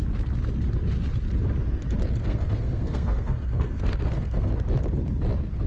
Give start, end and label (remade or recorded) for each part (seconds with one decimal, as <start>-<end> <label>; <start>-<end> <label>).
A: 0.0-2.2 recorded; 2.2-4.5 remade; 4.5-5.7 recorded